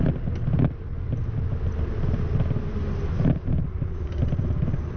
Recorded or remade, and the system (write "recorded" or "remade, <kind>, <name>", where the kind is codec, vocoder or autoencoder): recorded